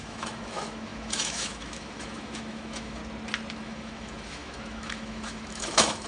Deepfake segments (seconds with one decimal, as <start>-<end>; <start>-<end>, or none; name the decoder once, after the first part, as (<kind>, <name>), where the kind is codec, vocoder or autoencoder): 0.0-3.0 (autoencoder, DAC-VAE); 3.5-6.1